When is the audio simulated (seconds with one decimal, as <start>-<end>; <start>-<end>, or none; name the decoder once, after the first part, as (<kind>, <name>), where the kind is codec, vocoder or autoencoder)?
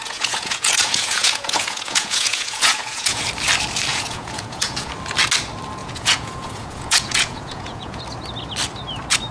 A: 0.0-3.2 (vocoder, Vocos); 3.9-4.9; 5.8-8.0